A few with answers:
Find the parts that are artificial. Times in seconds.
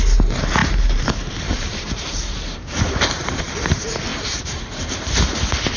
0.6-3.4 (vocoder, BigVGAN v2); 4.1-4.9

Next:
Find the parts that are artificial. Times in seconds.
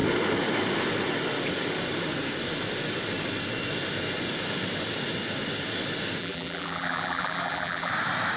6.2-7.9 (vocoder, BigVGAN v2)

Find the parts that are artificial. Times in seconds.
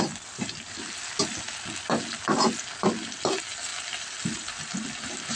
3.7-4.7 (vocoder, BigVGAN v2)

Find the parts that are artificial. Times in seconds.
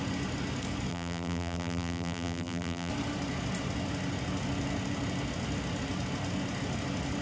0.9-2.9 (vocoder, BigVGAN v2)